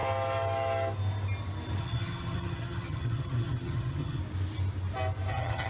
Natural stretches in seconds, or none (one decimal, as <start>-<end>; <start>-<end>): 0.0-1.8; 4.2-5.3